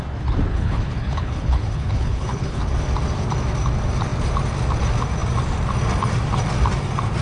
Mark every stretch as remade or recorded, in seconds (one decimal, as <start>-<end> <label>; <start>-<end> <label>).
0.0-0.5 recorded; 0.5-2.6 remade; 2.6-7.2 recorded